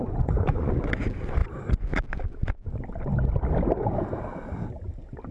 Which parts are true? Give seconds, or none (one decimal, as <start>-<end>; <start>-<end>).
0.9-5.3